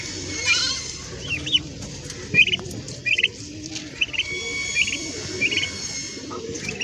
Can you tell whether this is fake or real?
real